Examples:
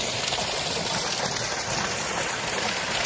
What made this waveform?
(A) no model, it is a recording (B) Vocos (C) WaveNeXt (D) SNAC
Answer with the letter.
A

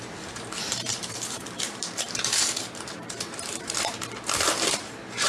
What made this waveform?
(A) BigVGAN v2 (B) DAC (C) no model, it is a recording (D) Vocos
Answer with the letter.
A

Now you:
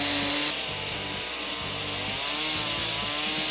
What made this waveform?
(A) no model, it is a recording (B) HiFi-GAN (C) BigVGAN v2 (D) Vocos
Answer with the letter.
A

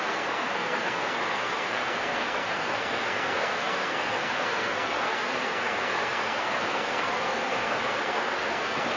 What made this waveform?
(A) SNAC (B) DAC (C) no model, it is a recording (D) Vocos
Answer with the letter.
A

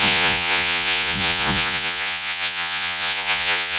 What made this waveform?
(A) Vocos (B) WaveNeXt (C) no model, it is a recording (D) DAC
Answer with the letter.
A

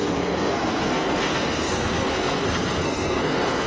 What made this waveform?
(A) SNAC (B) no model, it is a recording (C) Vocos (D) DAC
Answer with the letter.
A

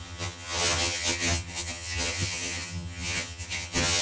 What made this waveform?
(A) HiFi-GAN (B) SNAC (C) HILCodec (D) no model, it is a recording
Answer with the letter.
A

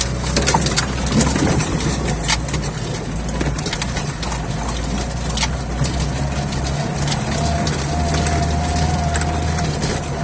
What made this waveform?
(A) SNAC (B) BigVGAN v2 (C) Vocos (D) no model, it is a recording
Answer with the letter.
D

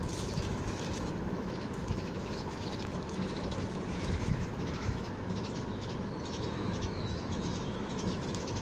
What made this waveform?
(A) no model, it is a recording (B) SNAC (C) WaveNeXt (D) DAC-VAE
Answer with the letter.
D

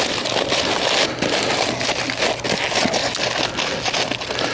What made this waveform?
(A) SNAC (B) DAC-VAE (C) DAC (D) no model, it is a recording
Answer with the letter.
D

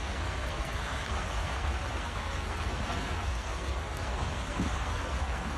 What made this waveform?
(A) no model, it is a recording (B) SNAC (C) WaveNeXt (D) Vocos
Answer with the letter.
B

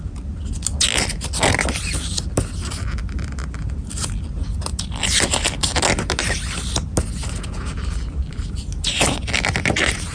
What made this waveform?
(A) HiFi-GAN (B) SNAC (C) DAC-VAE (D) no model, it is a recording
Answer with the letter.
D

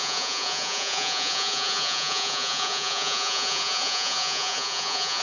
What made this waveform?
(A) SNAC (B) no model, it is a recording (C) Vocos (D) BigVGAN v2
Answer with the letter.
C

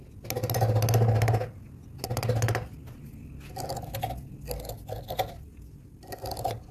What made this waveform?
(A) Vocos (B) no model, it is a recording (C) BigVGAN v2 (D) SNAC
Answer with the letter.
B